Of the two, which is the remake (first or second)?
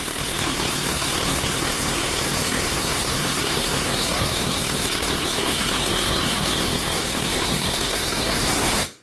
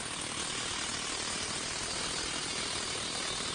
first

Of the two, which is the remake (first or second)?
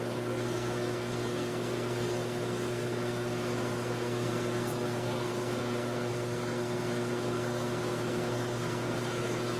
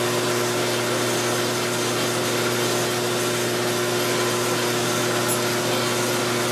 first